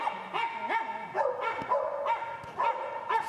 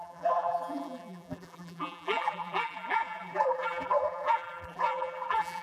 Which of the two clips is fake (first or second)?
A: second